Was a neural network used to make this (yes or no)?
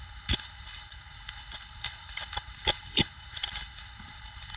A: yes